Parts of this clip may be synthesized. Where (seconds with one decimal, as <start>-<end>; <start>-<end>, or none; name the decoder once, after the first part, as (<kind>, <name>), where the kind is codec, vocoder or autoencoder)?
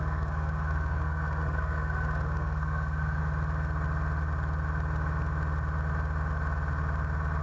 0.0-3.2 (codec, SNAC)